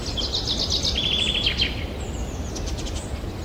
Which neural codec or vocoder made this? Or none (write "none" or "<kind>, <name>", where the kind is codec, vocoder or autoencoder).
none